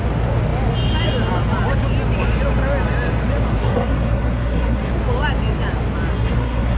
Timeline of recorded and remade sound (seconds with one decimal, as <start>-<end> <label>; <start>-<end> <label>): 0.0-3.6 recorded; 3.6-4.9 remade; 4.9-6.1 recorded; 6.1-6.8 remade